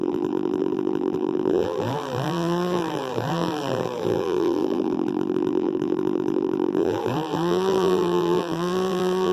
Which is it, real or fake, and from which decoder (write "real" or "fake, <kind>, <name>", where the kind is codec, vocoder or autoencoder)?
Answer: fake, vocoder, BigVGAN v2